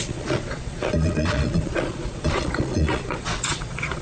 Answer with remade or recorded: remade